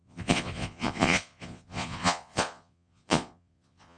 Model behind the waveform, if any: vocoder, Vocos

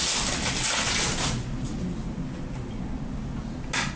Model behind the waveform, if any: none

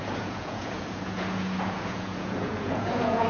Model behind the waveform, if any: vocoder, Vocos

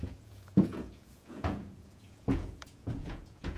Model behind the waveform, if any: vocoder, Vocos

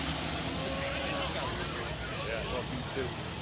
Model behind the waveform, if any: none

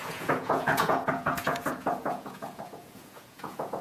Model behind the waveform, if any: vocoder, Vocos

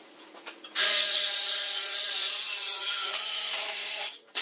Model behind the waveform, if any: vocoder, Vocos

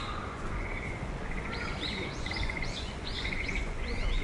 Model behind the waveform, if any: vocoder, Vocos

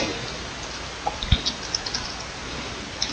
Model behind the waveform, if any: none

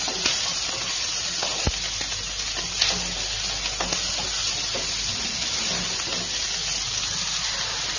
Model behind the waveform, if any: none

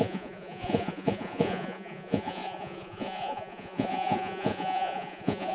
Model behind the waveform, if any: vocoder, Vocos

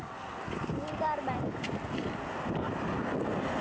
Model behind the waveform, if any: none